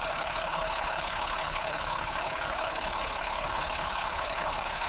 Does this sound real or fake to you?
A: fake